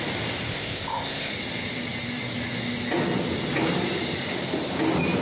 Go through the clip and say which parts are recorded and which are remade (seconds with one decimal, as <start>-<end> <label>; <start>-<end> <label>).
0.0-0.5 recorded; 0.5-1.3 remade; 1.3-5.2 recorded